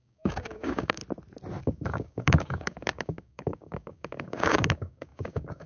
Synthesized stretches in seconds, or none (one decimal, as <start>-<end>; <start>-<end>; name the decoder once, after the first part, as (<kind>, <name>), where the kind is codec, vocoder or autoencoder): 0.0-1.0 (codec, DAC); 1.6-5.7